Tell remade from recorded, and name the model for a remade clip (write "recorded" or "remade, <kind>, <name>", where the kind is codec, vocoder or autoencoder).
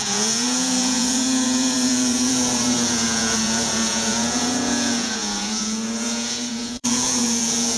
remade, vocoder, Vocos